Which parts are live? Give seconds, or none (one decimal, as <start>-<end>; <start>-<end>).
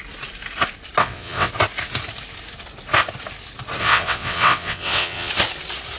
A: 0.0-1.0; 1.5-3.8; 5.3-6.0